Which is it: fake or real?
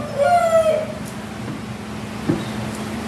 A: real